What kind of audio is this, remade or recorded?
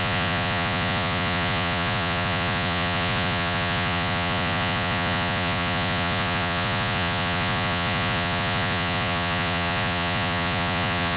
remade